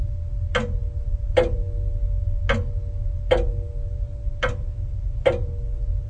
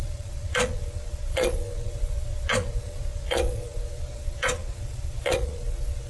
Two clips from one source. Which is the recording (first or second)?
first